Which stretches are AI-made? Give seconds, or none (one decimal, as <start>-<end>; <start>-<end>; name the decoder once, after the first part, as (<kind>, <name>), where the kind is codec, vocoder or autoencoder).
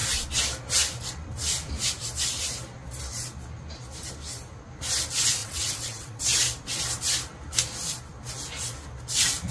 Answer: 5.4-6.2 (vocoder, WaveNeXt)